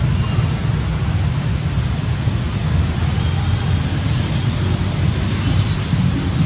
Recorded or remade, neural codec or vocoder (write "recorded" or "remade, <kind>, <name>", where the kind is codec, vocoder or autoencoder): recorded